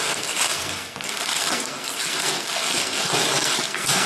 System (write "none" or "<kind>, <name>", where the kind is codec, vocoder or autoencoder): codec, SNAC